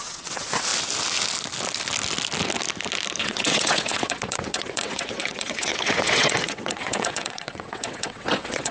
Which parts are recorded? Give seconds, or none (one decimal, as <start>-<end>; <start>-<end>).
0.7-3.2